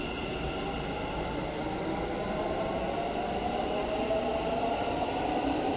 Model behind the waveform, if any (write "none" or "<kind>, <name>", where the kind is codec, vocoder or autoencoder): none